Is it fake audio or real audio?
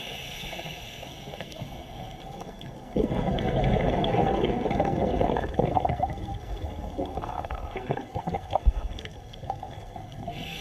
fake